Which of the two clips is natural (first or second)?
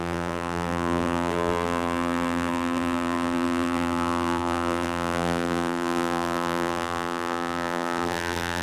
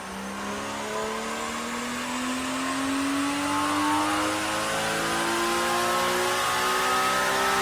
second